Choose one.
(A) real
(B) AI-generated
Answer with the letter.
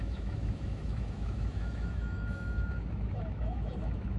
B